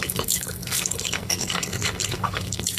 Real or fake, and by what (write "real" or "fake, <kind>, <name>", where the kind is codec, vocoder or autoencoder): fake, codec, SNAC